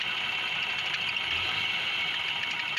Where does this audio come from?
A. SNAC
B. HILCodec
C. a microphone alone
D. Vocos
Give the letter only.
C